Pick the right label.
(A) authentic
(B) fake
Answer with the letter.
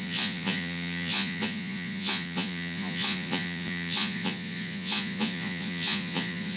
B